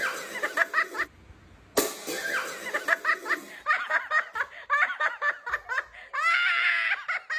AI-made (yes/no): no